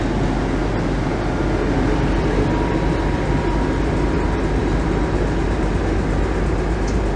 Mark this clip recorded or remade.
recorded